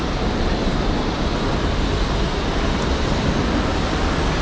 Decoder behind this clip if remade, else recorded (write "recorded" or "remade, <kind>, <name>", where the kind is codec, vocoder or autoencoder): recorded